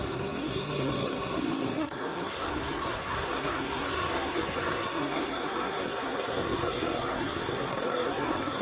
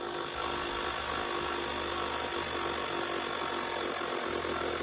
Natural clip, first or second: second